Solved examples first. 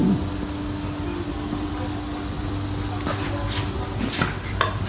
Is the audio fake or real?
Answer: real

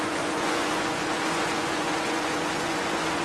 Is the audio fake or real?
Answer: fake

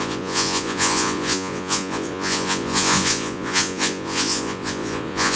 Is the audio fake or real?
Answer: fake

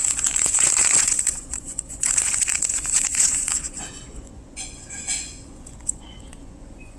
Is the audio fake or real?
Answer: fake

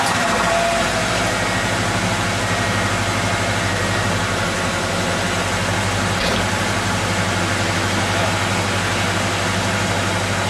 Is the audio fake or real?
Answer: real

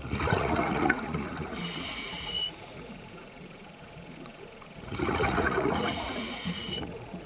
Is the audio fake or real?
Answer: fake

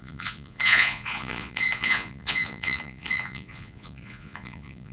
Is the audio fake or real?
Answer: fake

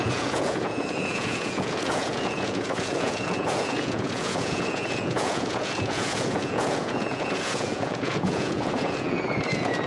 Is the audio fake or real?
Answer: fake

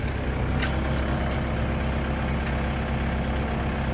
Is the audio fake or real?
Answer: real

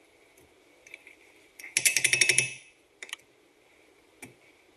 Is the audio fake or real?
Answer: real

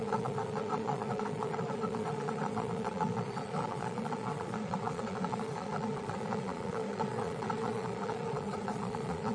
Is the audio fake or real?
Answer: fake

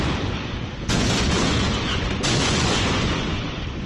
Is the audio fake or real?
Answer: fake